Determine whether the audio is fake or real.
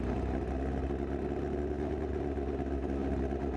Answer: real